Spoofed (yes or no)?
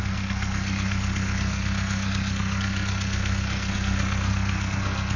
yes